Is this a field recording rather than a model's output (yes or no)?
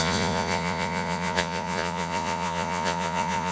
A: no